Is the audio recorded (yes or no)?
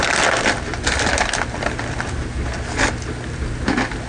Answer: yes